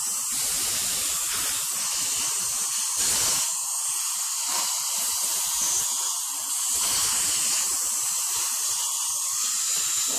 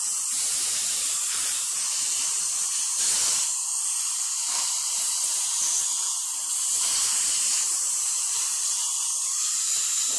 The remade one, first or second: second